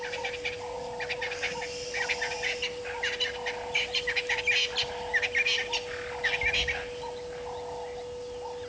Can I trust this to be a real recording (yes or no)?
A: yes